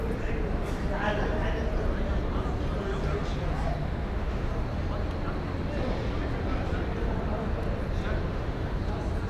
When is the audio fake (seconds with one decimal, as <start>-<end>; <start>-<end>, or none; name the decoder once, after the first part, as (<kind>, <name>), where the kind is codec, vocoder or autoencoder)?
3.8-4.5 (autoencoder, DAC-VAE); 8.3-8.8

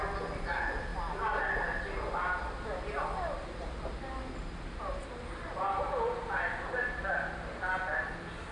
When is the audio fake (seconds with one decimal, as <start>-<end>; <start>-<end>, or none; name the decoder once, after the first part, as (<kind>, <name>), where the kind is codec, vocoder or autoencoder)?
none

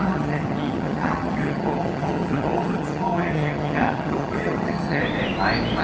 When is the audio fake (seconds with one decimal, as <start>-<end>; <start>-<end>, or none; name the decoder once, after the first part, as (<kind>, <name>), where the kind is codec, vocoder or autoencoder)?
0.0-5.0 (vocoder, HiFi-GAN)

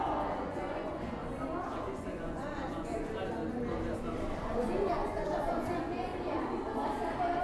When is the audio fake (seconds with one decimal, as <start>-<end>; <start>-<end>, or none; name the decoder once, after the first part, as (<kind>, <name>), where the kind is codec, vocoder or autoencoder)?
0.0-1.2 (vocoder, Vocos); 1.7-3.1; 4.4-6.1

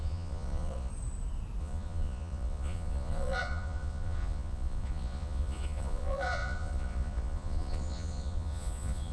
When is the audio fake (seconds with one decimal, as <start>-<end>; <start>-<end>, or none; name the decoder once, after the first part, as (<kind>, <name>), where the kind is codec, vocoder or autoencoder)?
0.0-0.9 (vocoder, Vocos); 1.6-9.1

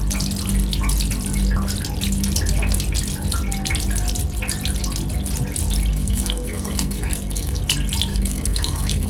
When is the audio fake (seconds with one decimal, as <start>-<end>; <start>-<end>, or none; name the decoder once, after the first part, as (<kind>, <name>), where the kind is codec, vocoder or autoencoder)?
5.9-7.6 (codec, SNAC); 8.1-9.1

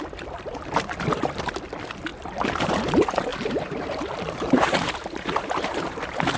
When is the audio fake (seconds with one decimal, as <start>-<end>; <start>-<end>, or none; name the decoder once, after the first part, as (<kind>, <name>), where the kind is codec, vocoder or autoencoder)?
3.3-6.0 (vocoder, BigVGAN v2)

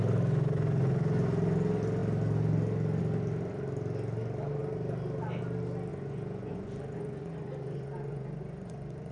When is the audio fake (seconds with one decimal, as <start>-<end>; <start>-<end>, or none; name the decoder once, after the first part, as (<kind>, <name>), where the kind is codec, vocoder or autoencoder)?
5.9-9.1 (vocoder, Vocos)